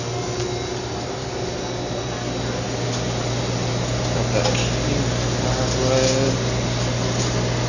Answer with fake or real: real